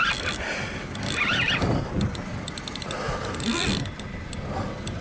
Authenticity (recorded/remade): recorded